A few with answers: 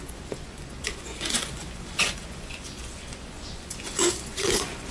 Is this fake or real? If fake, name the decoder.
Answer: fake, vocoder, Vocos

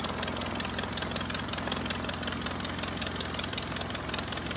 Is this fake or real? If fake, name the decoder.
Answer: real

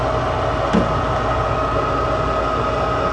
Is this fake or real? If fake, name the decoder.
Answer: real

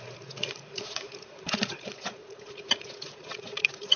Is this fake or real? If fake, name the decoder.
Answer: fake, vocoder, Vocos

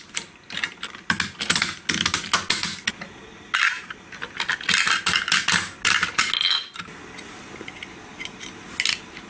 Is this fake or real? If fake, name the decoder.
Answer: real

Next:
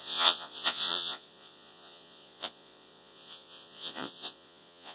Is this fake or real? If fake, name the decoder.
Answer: fake, vocoder, Vocos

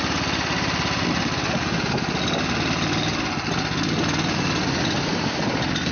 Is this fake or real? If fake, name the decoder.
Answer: real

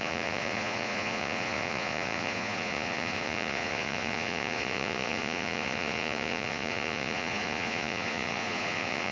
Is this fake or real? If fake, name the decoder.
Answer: fake, vocoder, Vocos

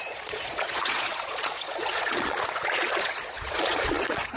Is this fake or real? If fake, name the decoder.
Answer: fake, vocoder, Vocos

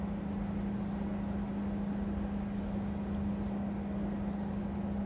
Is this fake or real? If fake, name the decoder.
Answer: real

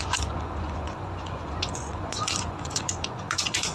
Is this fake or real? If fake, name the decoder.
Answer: fake, vocoder, Vocos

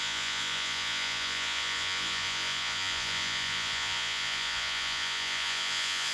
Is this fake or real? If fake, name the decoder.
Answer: fake, vocoder, Vocos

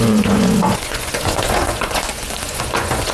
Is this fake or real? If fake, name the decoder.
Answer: fake, vocoder, Vocos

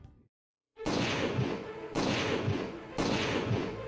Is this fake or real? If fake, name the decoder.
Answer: fake, vocoder, Vocos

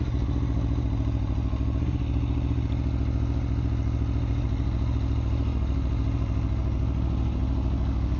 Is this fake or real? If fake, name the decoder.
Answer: real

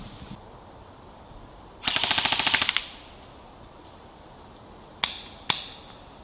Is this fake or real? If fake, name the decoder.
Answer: real